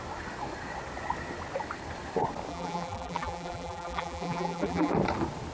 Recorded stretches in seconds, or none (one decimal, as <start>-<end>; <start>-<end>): 0.0-2.5; 4.9-5.5